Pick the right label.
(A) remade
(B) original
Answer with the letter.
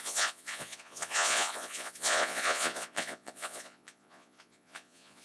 A